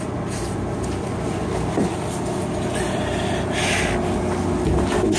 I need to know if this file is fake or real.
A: real